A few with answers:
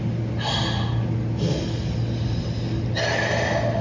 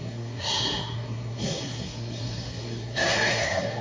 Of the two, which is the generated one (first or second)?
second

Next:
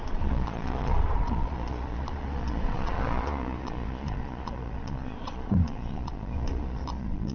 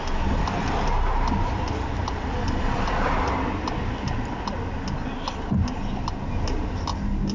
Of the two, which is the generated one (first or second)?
first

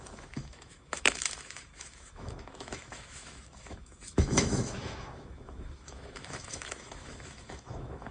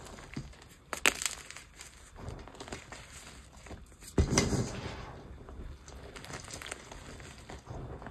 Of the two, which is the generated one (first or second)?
first